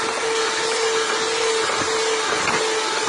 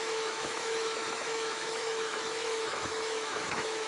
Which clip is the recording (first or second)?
first